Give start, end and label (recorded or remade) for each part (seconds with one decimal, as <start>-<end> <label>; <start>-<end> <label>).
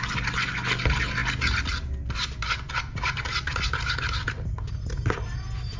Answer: 0.0-5.8 recorded